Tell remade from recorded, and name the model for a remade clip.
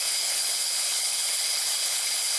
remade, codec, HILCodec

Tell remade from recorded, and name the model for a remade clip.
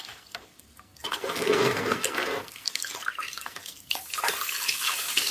remade, codec, SNAC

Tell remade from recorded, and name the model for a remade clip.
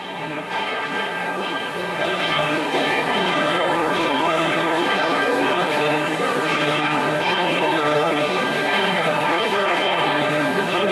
remade, codec, SNAC